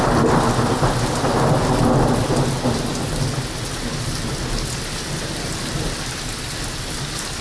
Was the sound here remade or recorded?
recorded